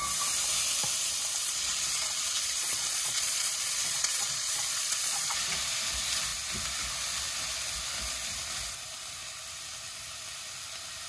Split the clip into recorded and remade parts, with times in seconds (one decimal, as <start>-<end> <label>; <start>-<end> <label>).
0.0-1.4 recorded; 1.4-5.4 remade; 5.4-11.1 recorded